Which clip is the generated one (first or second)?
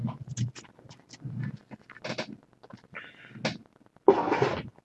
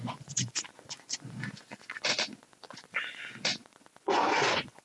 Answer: second